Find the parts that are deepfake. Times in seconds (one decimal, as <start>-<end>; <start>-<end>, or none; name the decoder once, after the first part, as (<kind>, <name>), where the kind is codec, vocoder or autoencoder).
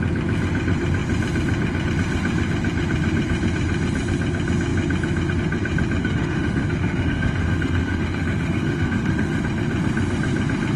6.0-9.4 (autoencoder, DAC-VAE)